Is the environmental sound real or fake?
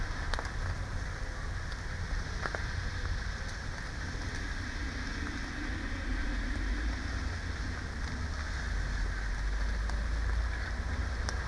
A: real